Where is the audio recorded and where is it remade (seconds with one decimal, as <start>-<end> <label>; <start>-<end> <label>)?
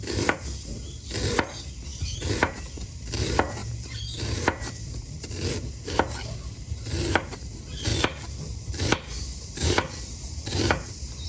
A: 0.0-1.9 recorded; 1.9-2.5 remade; 2.5-3.6 recorded; 3.6-5.2 remade; 5.2-7.9 recorded; 7.9-10.9 remade; 10.9-11.3 recorded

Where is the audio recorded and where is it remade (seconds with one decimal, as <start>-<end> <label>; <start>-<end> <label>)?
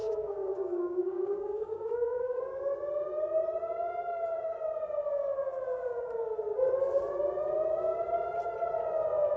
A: 0.0-2.4 remade; 2.4-9.4 recorded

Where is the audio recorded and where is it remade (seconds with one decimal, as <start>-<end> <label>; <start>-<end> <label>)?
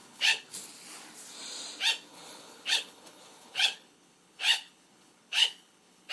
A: 0.0-0.5 remade; 0.5-2.1 recorded; 2.1-6.1 remade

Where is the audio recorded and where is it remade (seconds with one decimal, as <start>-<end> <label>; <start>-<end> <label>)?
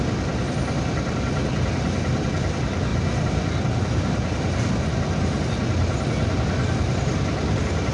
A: 0.0-7.9 recorded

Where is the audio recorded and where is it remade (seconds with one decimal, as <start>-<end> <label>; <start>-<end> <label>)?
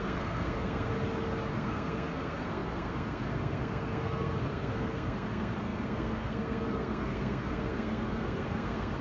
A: 0.0-0.9 remade; 0.9-1.5 recorded; 1.5-9.0 remade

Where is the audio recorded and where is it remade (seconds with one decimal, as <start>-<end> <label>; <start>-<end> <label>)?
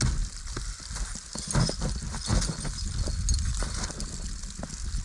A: 0.0-5.0 recorded